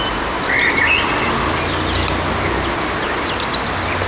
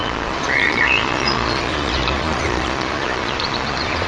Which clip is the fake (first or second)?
second